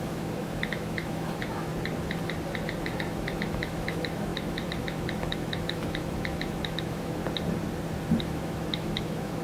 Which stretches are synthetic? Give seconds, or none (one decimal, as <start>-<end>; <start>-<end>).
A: 0.0-1.7; 2.8-7.2; 8.2-9.4

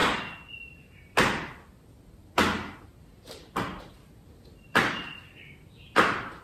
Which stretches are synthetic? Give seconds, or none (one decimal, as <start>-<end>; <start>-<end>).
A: none

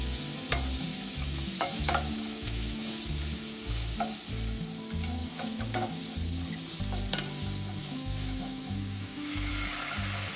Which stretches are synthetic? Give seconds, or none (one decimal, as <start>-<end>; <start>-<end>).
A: 0.9-3.2; 5.2-6.0; 7.8-9.5

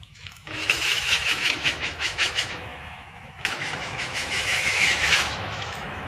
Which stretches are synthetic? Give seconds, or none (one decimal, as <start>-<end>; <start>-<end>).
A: 0.0-6.1